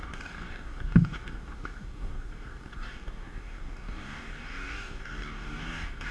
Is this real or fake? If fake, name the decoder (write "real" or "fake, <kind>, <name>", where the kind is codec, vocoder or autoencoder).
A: fake, codec, DAC